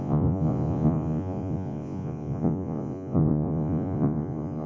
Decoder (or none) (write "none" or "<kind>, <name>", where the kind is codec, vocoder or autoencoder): vocoder, Vocos